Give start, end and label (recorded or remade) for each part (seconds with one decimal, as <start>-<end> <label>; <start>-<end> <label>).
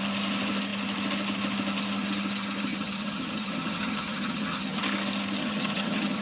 0.0-2.7 recorded; 2.7-4.8 remade; 4.8-5.4 recorded; 5.4-6.2 remade